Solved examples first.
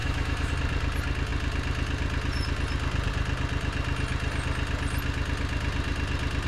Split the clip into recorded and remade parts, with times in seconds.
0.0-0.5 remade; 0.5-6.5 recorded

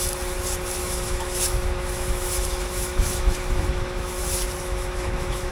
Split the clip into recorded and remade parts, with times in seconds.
0.0-0.8 recorded; 0.8-4.1 remade; 4.1-4.6 recorded; 4.6-5.5 remade

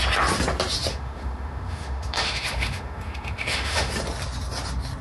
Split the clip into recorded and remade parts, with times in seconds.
0.0-0.9 recorded; 0.9-3.9 remade; 3.9-5.0 recorded